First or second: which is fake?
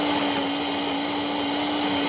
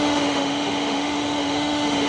second